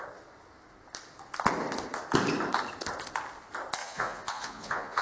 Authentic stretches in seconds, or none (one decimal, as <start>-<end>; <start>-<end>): 0.0-3.8